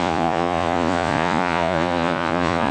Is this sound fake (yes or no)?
yes